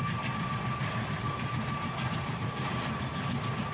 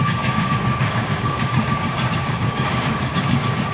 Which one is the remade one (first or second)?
second